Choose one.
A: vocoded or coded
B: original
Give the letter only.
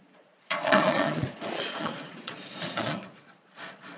A